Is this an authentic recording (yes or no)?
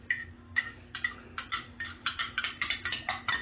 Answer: yes